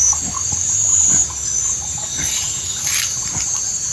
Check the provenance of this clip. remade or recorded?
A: remade